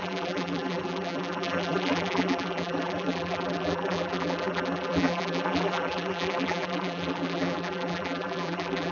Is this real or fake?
fake